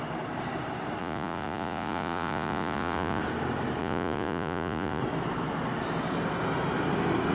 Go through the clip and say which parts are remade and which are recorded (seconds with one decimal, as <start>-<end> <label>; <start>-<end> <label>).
0.0-1.0 recorded; 1.0-3.2 remade; 3.2-3.8 recorded; 3.8-5.0 remade; 5.0-7.3 recorded